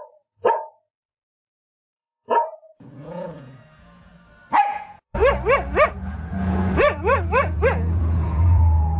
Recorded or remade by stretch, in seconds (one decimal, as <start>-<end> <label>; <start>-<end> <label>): 0.0-4.1 remade; 4.1-4.6 recorded; 4.6-5.2 remade; 5.2-5.9 recorded; 5.9-9.0 remade